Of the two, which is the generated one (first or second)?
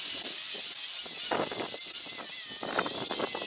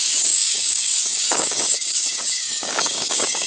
second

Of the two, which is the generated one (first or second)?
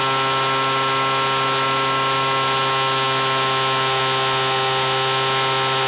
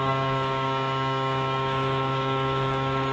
second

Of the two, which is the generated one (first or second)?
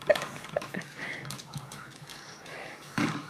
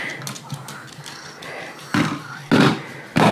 first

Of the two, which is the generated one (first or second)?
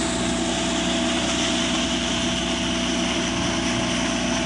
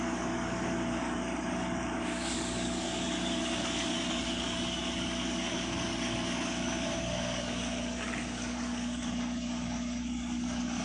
second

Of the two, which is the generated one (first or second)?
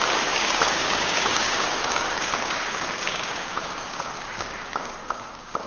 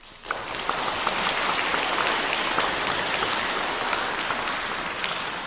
first